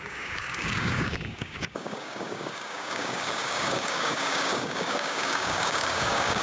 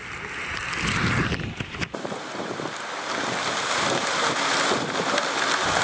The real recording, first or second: second